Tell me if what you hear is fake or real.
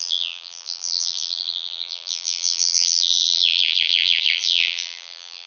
fake